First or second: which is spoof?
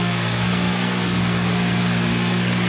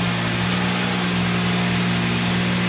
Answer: first